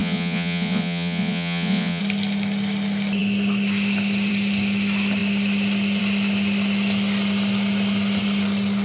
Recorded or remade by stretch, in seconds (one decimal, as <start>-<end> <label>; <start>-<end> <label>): 0.0-2.0 remade; 2.0-8.8 recorded